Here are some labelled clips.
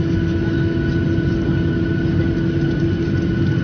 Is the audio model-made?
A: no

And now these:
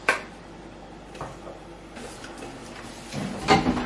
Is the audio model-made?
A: yes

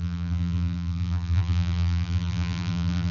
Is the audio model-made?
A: yes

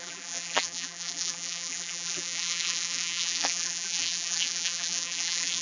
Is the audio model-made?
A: yes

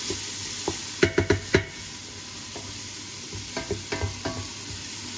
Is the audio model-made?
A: no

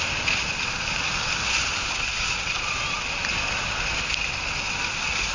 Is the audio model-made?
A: no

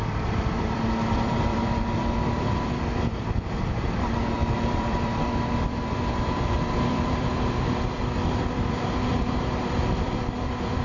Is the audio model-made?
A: yes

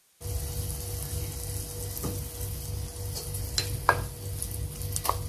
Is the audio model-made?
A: no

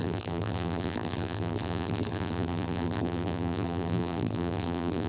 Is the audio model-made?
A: yes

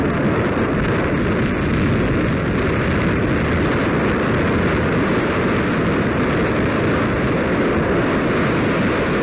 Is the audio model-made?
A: no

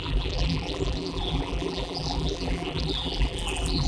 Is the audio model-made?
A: yes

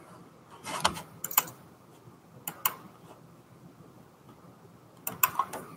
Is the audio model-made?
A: no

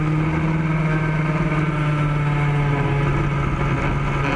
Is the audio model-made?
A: no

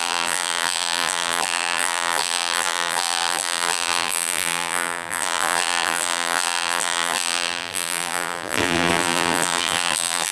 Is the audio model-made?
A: yes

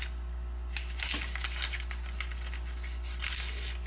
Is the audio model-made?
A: no